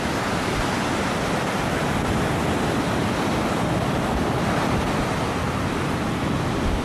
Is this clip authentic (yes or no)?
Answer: yes